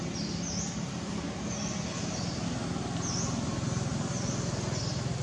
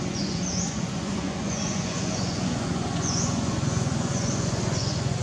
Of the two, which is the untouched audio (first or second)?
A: first